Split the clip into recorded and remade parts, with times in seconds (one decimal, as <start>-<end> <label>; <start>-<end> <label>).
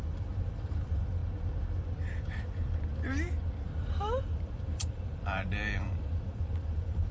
0.0-1.2 remade; 1.2-3.6 recorded; 3.6-7.1 remade